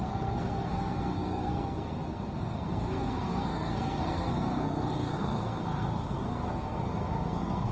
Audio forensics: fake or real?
fake